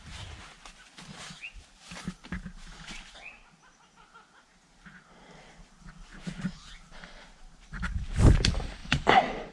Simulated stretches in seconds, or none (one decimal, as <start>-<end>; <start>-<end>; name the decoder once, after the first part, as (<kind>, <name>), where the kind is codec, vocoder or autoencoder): 6.1-6.7 (vocoder, BigVGAN v2); 8.8-9.5